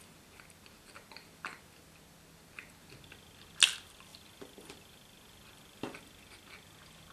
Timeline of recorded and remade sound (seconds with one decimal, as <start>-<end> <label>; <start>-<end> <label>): 0.0-4.1 recorded; 4.1-6.0 remade; 6.0-7.1 recorded